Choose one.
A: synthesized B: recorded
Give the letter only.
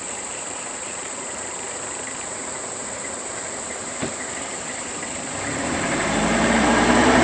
A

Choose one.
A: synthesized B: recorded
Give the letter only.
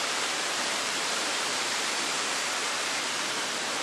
A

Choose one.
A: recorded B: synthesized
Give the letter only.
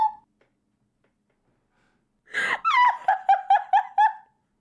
A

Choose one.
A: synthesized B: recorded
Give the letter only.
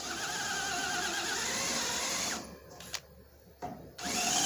B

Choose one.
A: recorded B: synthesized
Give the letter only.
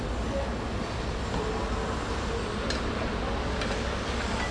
A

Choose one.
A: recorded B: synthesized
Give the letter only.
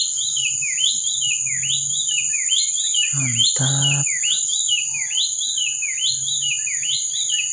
A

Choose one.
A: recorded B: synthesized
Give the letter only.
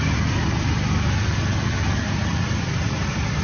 B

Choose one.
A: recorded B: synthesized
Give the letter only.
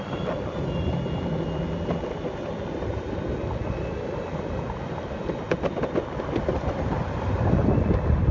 A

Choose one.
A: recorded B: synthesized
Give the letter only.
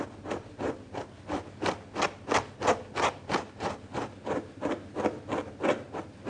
A